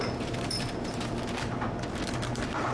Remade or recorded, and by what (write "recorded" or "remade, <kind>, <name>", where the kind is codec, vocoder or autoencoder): remade, vocoder, BigVGAN v2